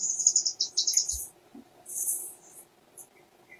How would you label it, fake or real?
real